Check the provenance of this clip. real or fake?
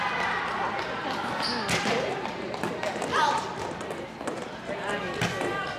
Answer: real